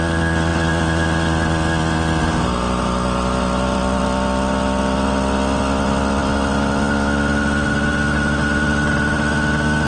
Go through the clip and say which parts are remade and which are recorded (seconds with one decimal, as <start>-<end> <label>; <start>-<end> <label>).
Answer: 0.0-9.9 recorded